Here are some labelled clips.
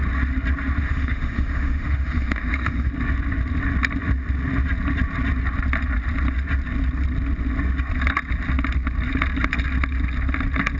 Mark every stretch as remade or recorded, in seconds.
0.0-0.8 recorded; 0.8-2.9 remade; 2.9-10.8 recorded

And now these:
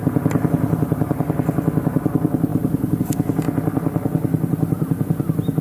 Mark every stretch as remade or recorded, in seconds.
0.0-5.6 recorded

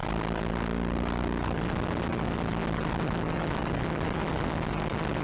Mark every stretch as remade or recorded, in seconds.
0.0-5.2 recorded